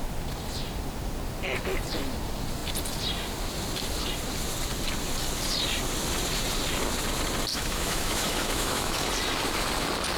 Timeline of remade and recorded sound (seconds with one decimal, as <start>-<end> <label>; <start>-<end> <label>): 0.0-7.5 recorded; 7.5-9.1 remade; 9.1-10.2 recorded